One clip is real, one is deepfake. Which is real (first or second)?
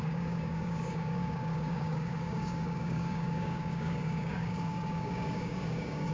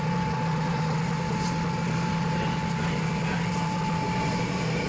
second